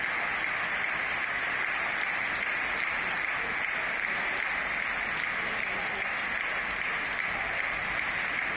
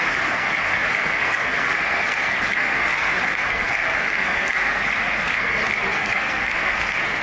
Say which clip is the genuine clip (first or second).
first